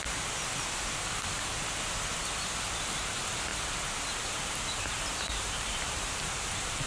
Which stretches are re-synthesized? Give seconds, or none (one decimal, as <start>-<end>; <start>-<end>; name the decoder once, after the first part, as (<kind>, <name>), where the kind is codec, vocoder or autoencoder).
3.5-6.9 (vocoder, BigVGAN v2)